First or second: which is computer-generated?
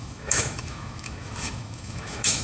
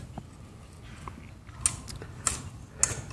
first